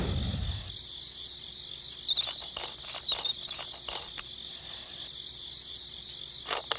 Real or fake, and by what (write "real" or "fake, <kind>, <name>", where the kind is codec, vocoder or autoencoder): real